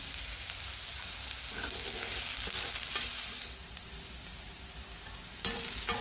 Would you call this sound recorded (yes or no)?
yes